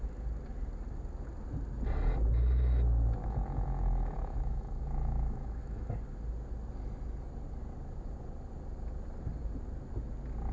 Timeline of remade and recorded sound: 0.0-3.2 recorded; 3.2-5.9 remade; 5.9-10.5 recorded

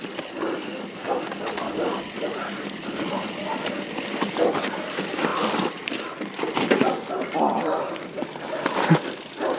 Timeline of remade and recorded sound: 0.0-5.3 recorded; 5.3-6.5 remade; 6.5-9.6 recorded

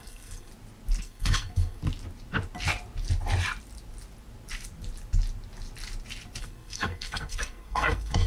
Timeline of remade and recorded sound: 0.0-0.5 remade; 0.5-1.0 recorded; 1.0-1.8 remade; 1.8-6.4 recorded; 6.4-8.3 remade

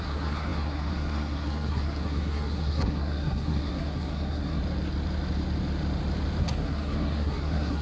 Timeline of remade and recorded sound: 0.0-4.6 remade; 4.6-6.4 recorded; 6.4-7.8 remade